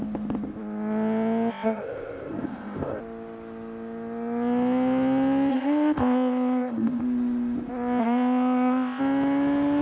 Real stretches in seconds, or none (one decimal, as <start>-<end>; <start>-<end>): 0.0-1.5; 3.0-5.5; 7.0-8.0; 9.0-9.8